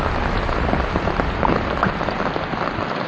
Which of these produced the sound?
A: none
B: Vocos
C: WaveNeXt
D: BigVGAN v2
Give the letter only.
D